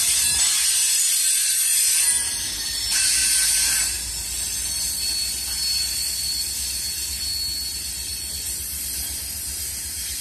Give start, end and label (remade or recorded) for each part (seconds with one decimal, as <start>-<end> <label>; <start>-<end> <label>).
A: 0.0-10.2 recorded